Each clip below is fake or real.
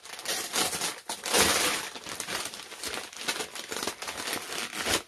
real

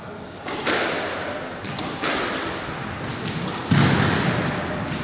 real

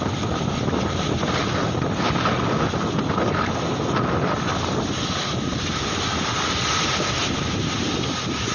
real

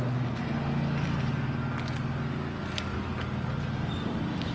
real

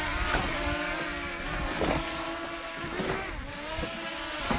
real